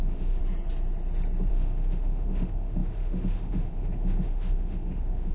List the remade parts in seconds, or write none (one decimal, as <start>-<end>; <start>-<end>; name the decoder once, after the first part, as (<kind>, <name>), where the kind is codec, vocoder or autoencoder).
0.0-0.4 (autoencoder, DAC-VAE); 1.5-5.3